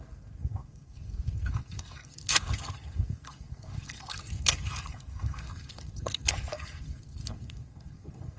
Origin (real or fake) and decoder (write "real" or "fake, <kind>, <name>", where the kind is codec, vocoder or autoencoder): fake, codec, SNAC